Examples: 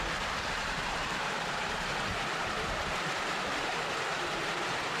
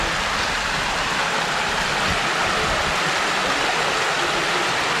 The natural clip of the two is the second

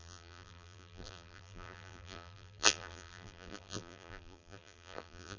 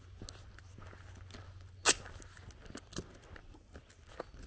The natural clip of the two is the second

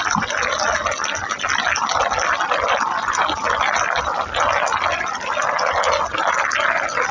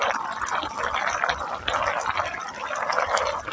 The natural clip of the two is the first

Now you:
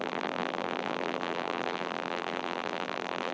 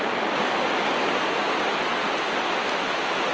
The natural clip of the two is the second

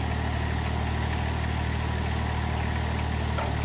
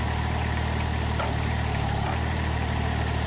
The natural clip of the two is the first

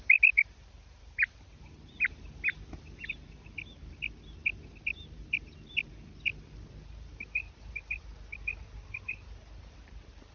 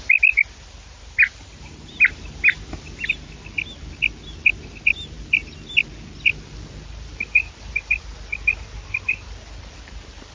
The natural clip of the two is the second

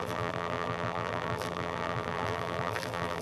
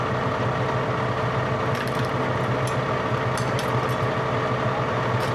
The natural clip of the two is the second